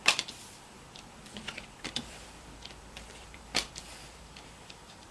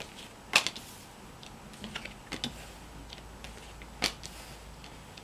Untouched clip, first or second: second